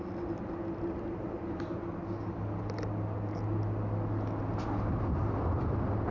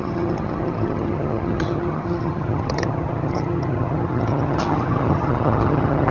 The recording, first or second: first